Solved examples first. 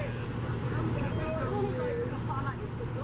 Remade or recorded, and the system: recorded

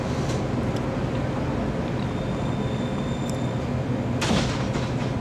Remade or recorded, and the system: recorded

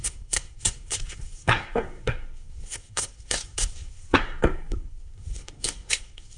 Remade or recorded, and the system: remade, codec, SNAC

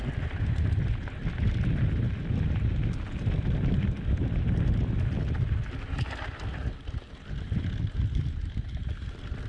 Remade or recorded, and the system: recorded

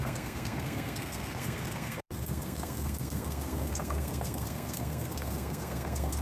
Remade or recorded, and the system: remade, codec, SNAC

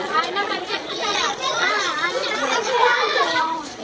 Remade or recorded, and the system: remade, vocoder, Vocos